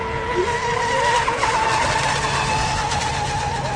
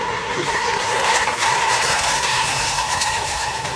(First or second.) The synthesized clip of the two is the second